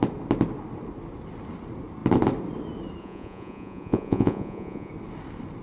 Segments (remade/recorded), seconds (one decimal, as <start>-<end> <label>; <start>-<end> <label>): 0.0-3.0 recorded; 3.0-4.9 remade; 4.9-5.6 recorded